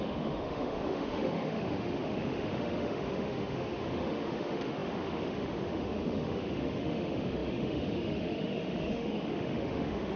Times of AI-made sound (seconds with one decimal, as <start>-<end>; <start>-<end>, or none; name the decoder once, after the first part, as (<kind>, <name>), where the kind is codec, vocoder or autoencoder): 0.0-10.2 (autoencoder, DAC-VAE)